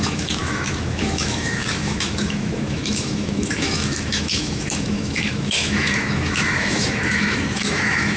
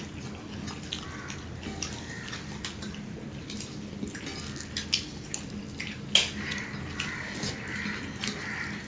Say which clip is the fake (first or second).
first